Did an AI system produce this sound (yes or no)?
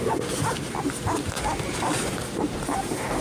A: yes